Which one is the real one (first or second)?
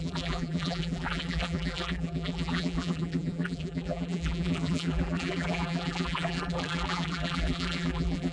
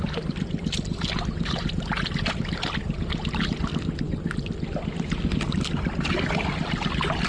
second